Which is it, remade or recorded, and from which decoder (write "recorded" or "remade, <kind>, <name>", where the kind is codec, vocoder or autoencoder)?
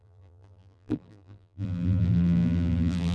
remade, vocoder, BigVGAN v2